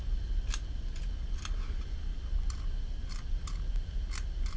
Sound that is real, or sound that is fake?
real